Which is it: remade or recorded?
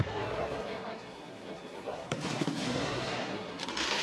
remade